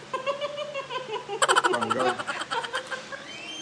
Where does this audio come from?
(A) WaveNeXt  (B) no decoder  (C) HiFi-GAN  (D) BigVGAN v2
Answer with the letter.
B